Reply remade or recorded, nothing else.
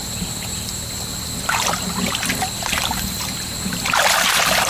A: recorded